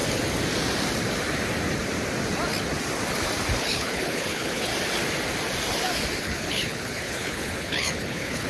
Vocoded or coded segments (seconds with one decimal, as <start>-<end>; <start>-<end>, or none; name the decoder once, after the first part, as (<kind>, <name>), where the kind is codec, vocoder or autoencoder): 3.6-4.7 (codec, HILCodec); 6.2-8.5